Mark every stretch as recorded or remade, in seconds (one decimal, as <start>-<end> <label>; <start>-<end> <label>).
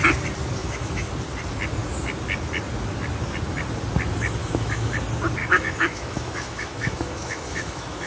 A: 0.0-0.6 recorded; 0.6-1.1 remade; 1.1-4.4 recorded; 4.4-4.9 remade; 4.9-5.4 recorded; 5.4-8.1 remade